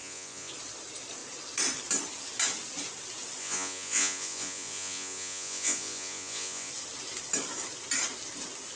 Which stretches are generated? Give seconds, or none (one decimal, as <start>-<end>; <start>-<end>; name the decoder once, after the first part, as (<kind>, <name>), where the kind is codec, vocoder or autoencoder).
0.0-0.5 (vocoder, Vocos); 3.4-6.7